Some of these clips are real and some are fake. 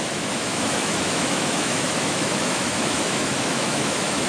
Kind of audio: fake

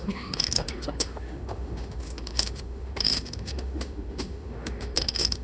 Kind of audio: fake